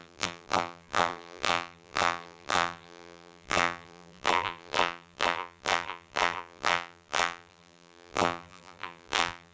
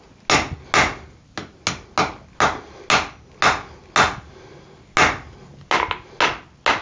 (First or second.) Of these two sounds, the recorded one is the second